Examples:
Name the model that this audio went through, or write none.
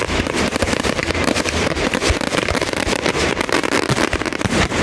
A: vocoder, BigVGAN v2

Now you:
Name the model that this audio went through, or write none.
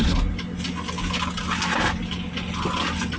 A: none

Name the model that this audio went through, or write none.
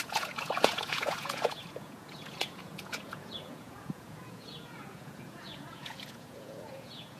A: vocoder, Vocos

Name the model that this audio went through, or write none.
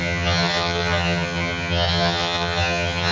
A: vocoder, HiFi-GAN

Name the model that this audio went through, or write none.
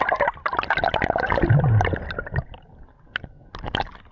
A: none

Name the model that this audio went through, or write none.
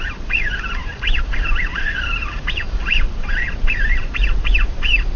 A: vocoder, BigVGAN v2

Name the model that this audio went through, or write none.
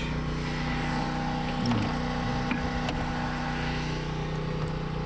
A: none